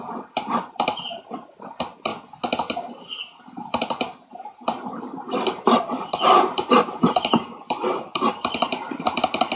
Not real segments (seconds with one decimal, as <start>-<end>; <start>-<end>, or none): 0.0-2.1; 2.6-9.6